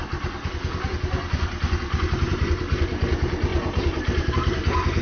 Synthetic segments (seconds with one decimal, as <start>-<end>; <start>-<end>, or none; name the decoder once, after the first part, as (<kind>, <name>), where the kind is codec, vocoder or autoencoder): 3.5-4.3 (vocoder, BigVGAN v2)